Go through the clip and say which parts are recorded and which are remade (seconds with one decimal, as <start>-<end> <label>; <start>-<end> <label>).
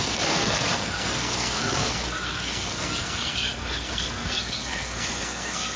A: 0.0-5.8 remade